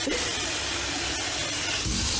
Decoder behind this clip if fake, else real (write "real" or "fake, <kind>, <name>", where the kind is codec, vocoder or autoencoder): real